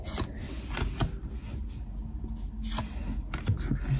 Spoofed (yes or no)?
no